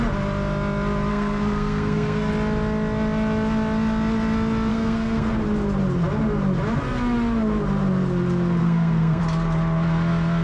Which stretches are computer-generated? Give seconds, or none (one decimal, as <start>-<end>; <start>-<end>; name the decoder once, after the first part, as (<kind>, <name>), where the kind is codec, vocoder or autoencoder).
1.1-2.3 (codec, SNAC); 4.7-5.3; 8.6-9.2